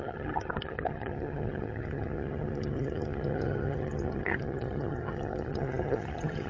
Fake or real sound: fake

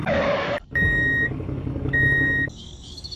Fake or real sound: fake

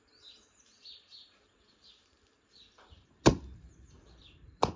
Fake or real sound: real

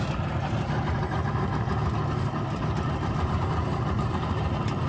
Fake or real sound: fake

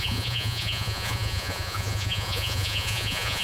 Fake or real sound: fake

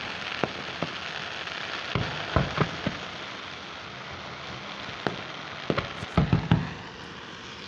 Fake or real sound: real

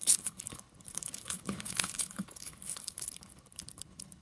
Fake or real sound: fake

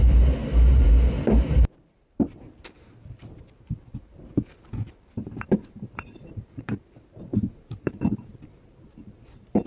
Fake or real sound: fake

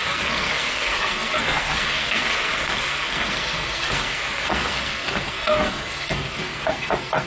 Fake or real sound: fake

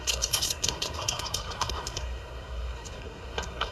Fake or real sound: fake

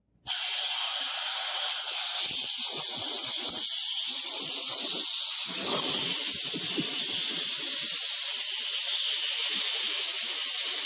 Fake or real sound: real